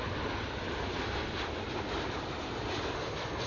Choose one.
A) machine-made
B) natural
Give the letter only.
B